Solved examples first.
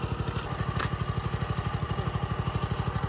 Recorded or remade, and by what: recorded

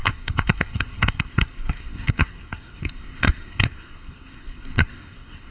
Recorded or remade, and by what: remade, codec, SNAC